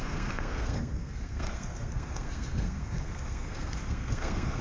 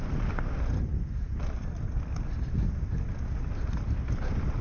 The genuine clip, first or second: second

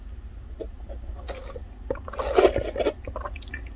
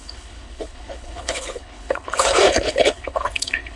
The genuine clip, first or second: first